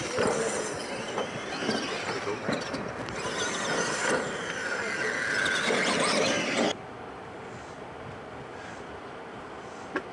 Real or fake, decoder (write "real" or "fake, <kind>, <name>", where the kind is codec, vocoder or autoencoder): real